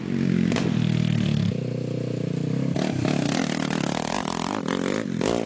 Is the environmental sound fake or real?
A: real